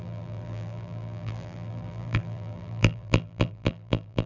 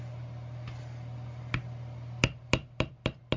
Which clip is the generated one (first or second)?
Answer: first